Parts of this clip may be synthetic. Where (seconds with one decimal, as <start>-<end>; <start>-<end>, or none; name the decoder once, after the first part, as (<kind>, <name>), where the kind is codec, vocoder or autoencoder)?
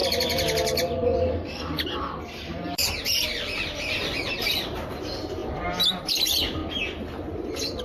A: 2.0-6.6 (vocoder, BigVGAN v2)